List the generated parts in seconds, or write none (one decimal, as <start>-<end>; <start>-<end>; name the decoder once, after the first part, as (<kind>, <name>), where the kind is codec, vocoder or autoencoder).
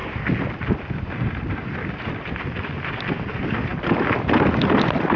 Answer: 0.0-0.9 (vocoder, BigVGAN v2)